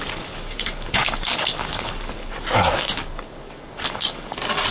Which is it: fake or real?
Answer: fake